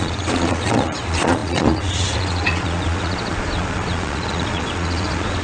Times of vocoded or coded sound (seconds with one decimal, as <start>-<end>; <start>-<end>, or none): 0.0-5.4